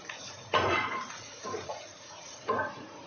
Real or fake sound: fake